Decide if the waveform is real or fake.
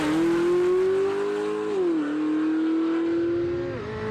real